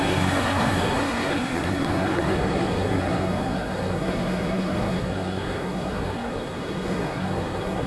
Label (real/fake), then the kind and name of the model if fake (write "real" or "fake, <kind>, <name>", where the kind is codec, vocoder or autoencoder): fake, codec, SNAC